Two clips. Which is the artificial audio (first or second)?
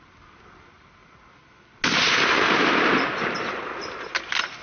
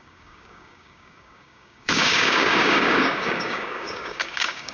second